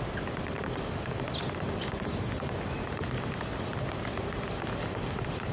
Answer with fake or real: real